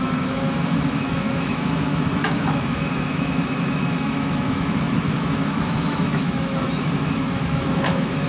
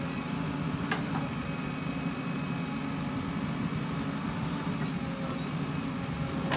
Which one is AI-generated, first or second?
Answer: first